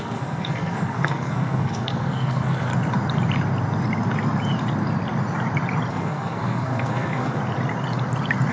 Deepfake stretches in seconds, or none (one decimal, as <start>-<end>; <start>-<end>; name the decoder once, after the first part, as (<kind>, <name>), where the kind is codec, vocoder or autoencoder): 0.0-2.7 (codec, SNAC); 5.9-7.4